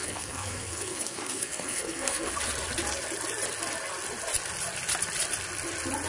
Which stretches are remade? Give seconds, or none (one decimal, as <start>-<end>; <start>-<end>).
0.0-2.3